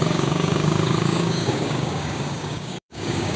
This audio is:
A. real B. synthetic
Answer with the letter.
B